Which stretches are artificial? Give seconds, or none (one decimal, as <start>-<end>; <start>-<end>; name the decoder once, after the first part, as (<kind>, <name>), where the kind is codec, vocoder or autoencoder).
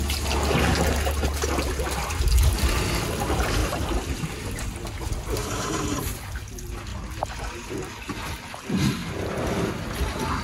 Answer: 3.6-4.3 (vocoder, BigVGAN v2); 5.4-6.4; 9.0-9.7